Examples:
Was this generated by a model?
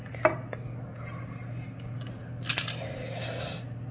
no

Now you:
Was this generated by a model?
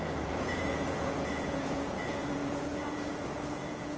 yes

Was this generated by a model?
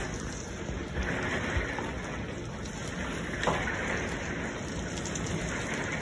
no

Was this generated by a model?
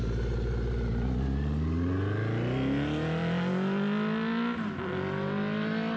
no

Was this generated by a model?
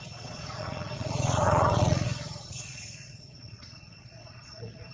yes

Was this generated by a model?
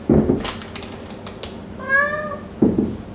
no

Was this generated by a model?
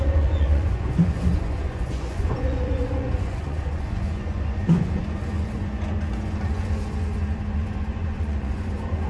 yes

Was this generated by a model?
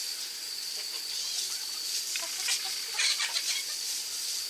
no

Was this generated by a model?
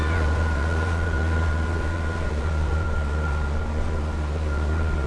yes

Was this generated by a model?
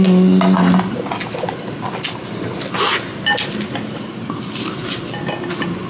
no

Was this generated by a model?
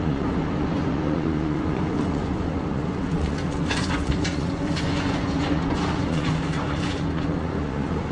yes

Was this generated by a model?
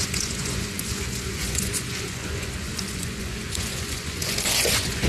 yes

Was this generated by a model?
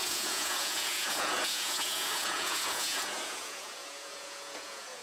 yes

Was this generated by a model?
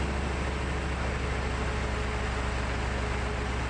no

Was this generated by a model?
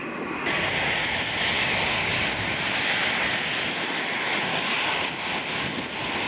no